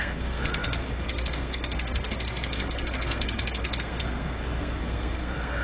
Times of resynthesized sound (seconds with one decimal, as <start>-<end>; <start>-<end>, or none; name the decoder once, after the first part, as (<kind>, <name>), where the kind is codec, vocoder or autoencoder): 0.0-5.6 (codec, SNAC)